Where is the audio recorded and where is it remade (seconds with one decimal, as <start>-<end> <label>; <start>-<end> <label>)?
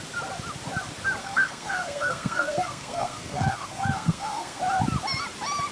0.0-1.2 recorded; 1.2-4.6 remade; 4.6-5.7 recorded